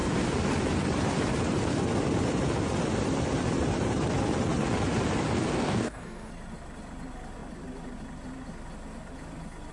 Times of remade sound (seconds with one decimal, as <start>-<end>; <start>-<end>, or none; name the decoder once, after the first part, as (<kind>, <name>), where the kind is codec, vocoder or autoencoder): 5.5-6.3 (codec, DAC)